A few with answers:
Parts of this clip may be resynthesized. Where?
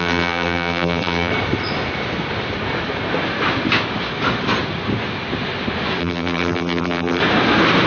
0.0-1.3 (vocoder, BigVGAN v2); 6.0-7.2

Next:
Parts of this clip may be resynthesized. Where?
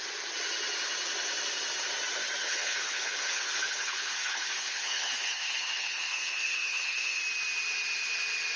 2.4-7.2 (codec, HILCodec)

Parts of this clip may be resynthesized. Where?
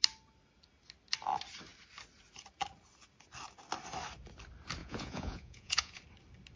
4.8-6.0 (vocoder, Vocos)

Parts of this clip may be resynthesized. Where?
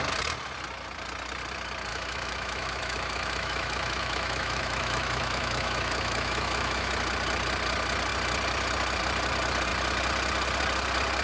1.9-6.9 (autoencoder, DAC-VAE)